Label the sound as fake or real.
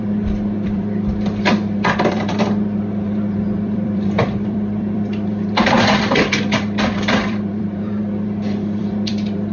fake